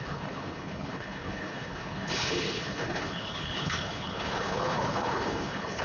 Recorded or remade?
remade